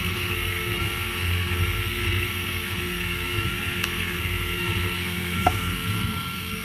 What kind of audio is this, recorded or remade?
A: remade